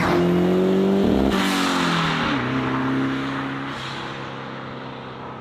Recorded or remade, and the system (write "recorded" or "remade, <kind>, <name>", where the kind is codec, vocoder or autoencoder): recorded